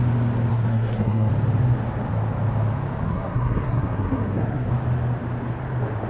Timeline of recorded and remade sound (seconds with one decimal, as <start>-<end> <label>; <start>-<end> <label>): 0.0-0.5 recorded; 0.5-1.3 remade; 1.3-3.1 recorded; 3.1-4.7 remade; 4.7-6.1 recorded